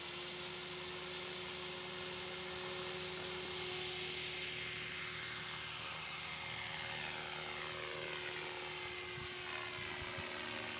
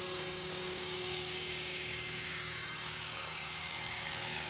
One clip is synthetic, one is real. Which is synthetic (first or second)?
second